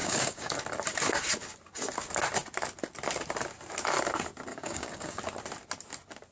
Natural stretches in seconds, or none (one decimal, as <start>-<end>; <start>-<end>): 0.5-4.5; 5.2-6.3